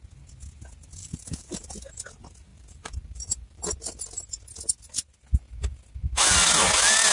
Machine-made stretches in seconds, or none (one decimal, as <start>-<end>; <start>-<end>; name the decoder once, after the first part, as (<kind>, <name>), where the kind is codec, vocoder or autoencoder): 1.0-1.6 (vocoder, BigVGAN v2); 2.5-3.6